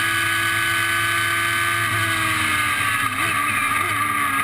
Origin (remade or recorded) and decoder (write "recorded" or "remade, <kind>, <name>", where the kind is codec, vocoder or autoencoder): recorded